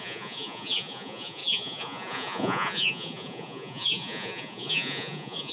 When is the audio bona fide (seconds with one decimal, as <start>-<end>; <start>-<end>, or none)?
none